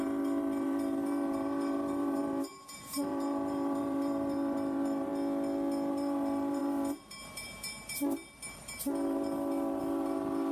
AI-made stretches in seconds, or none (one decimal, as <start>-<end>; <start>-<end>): 0.0-5.1; 5.9-10.5

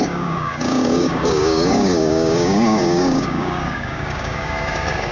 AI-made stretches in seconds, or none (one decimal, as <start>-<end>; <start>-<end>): 0.0-5.1

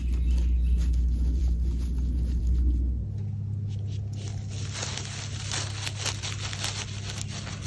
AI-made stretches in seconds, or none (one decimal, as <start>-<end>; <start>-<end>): none

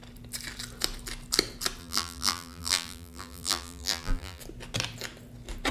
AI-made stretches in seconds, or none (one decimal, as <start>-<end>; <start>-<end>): 1.8-4.4